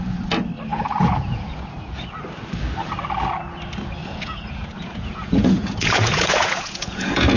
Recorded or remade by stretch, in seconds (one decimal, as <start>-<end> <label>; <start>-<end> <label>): 0.0-0.7 recorded; 0.7-2.1 remade; 2.1-4.0 recorded; 4.0-7.4 remade